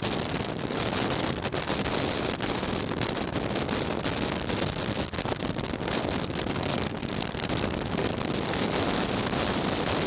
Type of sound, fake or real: fake